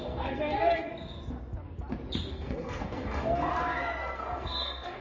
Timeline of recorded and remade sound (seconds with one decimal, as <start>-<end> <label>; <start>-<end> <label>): 0.0-0.9 remade; 0.9-2.3 recorded; 2.3-3.5 remade; 3.5-4.0 recorded; 4.0-5.0 remade